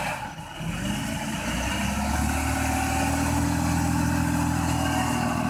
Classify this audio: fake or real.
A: real